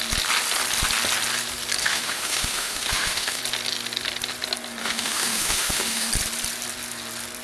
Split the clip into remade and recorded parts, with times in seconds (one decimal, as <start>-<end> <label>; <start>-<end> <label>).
0.0-1.8 recorded; 1.8-3.4 remade; 3.4-4.8 recorded; 4.8-6.1 remade; 6.1-7.4 recorded